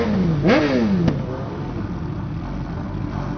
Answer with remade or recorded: recorded